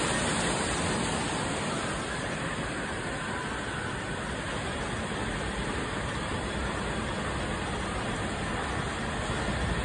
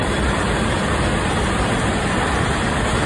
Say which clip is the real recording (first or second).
first